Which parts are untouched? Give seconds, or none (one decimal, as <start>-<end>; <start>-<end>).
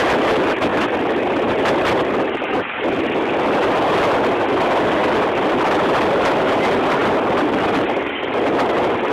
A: 0.0-9.1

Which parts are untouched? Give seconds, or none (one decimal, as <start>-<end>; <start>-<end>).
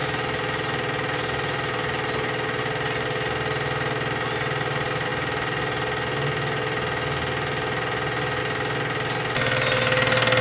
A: 0.0-10.4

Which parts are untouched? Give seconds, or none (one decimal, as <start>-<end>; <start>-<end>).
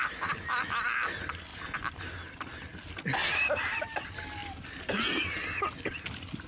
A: 0.0-6.5